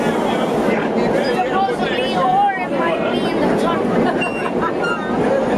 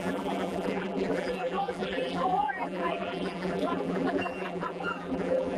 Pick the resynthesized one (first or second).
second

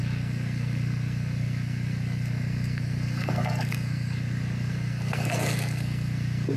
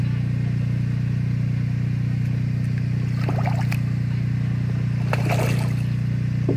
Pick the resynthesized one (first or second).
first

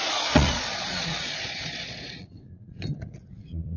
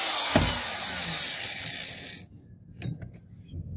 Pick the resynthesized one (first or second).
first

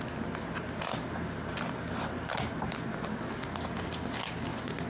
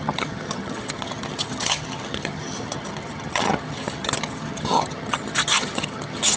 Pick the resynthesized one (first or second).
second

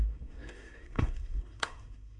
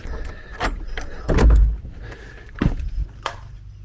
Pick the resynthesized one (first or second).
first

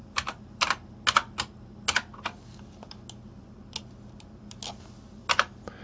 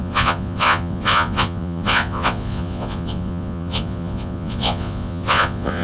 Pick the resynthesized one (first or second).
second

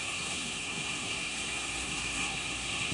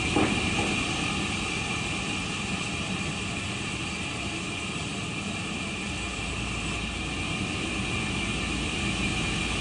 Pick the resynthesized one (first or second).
first